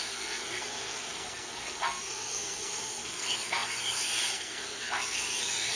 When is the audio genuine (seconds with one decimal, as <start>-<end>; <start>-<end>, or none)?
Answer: none